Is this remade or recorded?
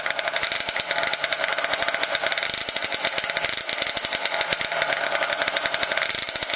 recorded